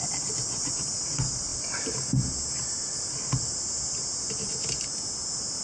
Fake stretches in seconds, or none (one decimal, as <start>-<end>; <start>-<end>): none